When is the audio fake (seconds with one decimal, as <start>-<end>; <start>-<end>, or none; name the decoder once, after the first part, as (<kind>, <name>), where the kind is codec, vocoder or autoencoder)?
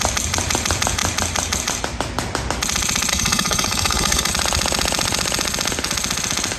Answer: 3.1-4.3 (codec, SNAC)